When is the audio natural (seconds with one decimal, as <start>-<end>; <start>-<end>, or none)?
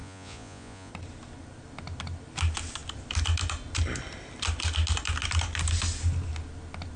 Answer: 0.9-7.0